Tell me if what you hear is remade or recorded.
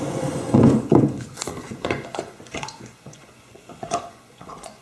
remade